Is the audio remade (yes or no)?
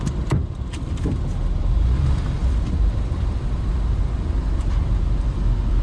yes